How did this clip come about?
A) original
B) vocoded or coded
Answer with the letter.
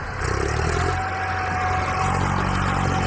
A